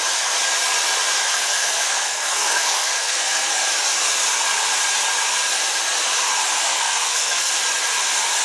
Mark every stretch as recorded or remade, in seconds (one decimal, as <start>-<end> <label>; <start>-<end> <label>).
0.0-1.3 recorded; 1.3-3.5 remade; 3.5-6.7 recorded; 6.7-7.5 remade; 7.5-8.4 recorded